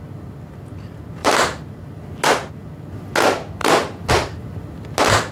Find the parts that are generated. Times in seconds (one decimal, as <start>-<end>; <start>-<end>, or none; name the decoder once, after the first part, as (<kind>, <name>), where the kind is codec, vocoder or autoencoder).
1.2-2.0 (vocoder, BigVGAN v2); 3.6-4.1